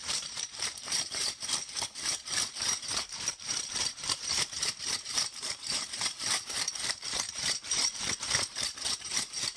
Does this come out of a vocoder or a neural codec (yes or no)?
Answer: yes